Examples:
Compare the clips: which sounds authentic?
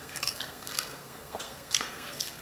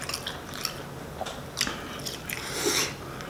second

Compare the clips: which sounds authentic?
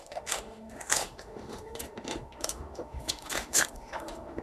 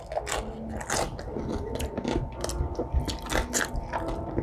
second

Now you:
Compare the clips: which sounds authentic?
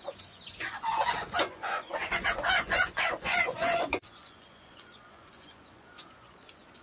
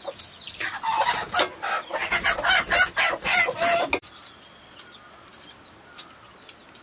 second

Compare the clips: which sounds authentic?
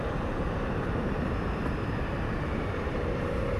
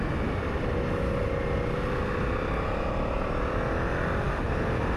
second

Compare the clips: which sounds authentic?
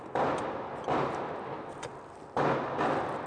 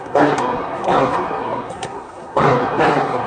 first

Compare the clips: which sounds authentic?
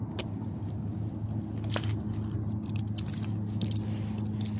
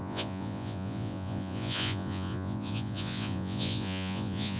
first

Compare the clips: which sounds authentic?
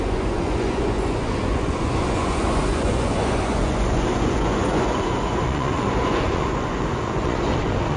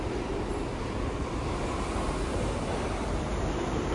second